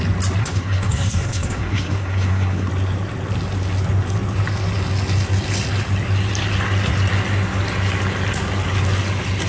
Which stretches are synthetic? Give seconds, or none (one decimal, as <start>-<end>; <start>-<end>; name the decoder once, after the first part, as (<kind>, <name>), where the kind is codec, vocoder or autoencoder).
0.4-2.7 (codec, SNAC)